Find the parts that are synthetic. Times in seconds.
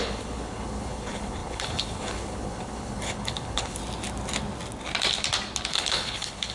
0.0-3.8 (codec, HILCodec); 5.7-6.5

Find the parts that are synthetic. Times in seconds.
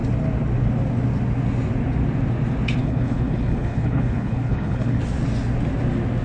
2.8-5.0 (codec, HILCodec)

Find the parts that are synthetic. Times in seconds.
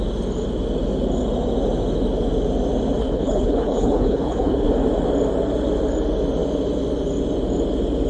3.0-4.7 (codec, HILCodec)